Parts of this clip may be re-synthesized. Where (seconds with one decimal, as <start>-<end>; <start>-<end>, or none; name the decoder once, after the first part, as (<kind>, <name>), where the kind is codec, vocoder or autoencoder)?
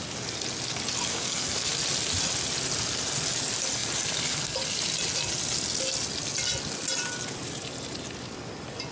1.1-1.7 (codec, SNAC)